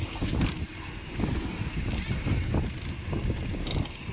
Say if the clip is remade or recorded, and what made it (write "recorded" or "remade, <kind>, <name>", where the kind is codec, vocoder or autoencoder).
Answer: recorded